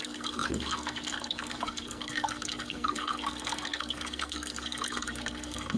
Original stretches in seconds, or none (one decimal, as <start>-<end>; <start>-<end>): none